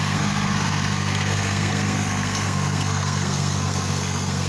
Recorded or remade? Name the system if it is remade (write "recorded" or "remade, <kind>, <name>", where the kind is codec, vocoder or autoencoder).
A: remade, codec, SNAC